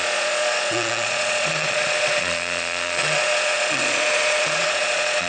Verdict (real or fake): fake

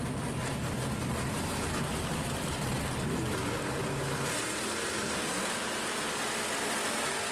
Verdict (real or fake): real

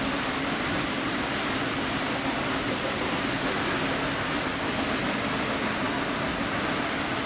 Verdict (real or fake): real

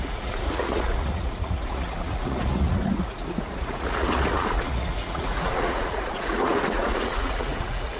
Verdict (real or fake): fake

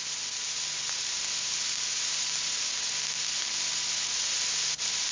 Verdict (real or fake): real